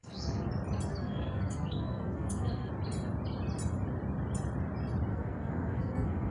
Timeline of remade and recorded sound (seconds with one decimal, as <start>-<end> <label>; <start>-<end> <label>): 0.0-0.5 remade; 0.5-0.9 recorded; 0.9-2.7 remade; 2.7-5.1 recorded; 5.1-6.3 remade